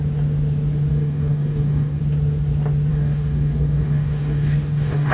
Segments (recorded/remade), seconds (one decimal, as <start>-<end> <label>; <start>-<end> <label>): 0.0-0.9 recorded; 0.9-2.0 remade; 2.0-2.9 recorded; 2.9-5.1 remade